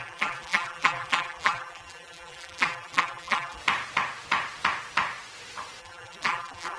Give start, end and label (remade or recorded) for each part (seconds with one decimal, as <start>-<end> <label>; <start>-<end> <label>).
0.0-3.6 remade; 3.6-5.8 recorded; 5.8-6.8 remade